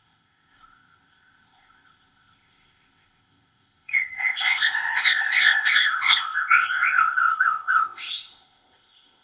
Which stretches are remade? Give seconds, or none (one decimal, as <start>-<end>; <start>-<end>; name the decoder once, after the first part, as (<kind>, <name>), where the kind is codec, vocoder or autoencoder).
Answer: 0.0-9.2 (codec, ZipCodec)